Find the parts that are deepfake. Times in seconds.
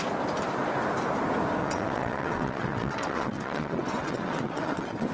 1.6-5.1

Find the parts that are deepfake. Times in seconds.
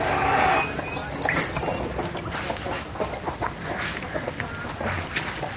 none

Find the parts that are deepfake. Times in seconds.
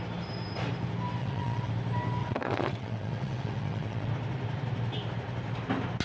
1.2-1.7; 2.2-4.1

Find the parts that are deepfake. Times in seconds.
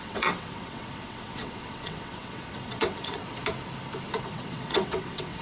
0.0-3.2; 4.2-5.4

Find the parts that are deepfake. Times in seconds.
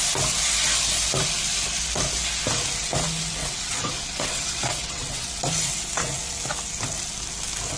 3.4-5.3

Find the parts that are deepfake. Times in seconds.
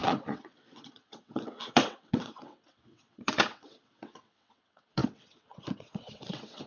0.0-6.7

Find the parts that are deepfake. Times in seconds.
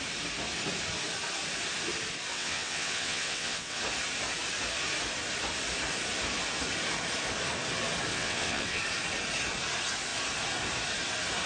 2.3-3.8; 8.1-8.8